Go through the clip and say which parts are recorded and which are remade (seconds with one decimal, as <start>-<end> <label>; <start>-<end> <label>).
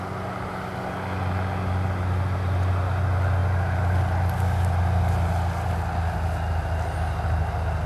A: 0.0-7.9 recorded